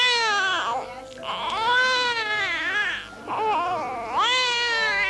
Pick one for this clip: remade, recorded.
recorded